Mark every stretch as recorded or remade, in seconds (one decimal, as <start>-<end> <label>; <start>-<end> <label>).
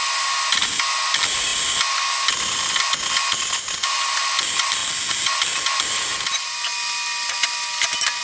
0.0-8.2 recorded